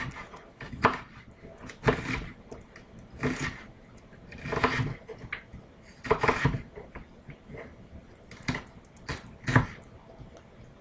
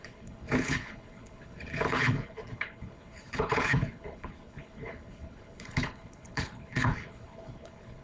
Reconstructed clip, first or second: second